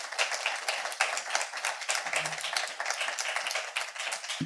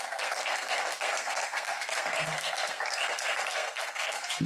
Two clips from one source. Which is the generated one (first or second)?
second